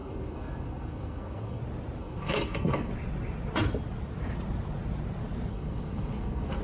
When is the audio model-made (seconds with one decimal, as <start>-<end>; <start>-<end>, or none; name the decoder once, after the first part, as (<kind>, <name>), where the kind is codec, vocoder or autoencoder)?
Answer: 0.0-1.6 (codec, SNAC); 2.0-2.9; 5.5-6.6